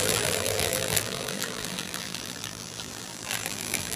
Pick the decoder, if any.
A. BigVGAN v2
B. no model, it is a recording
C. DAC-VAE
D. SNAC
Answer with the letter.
A